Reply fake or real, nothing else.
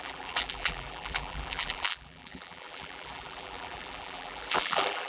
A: fake